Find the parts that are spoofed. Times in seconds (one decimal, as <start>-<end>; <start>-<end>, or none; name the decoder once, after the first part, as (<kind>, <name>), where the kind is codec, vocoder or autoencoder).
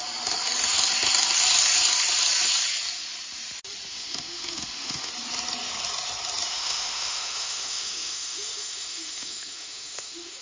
3.9-5.1 (autoencoder, DAC-VAE); 6.5-10.4